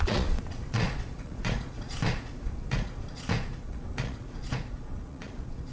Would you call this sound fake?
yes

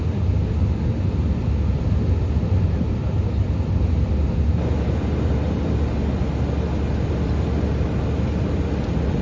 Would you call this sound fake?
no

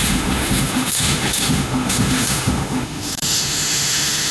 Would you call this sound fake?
yes